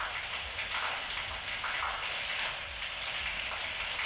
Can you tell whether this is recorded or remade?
recorded